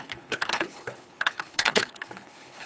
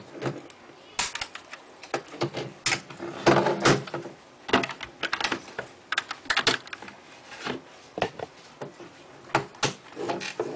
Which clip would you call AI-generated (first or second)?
first